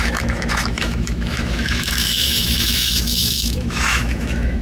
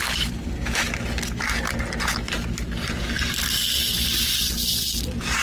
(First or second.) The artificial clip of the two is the first